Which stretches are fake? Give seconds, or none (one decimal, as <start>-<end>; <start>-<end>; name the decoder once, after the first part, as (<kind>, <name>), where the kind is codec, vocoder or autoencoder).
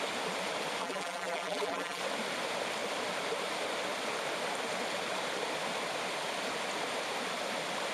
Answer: 0.8-2.0 (vocoder, BigVGAN v2)